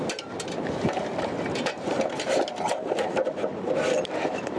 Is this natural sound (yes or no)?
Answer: no